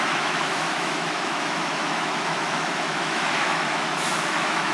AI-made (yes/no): yes